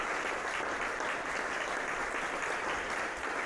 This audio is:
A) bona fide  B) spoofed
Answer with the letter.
A